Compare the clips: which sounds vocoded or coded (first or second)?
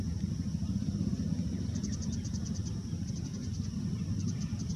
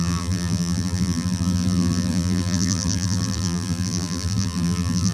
second